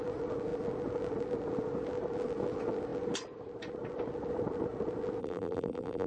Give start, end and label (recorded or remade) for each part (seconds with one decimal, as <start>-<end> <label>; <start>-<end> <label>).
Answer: 0.0-5.2 recorded; 5.2-6.1 remade